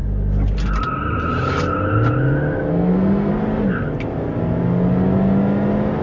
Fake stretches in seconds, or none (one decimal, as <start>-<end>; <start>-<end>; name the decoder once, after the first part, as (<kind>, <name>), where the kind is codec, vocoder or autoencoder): 2.7-3.3 (codec, SNAC)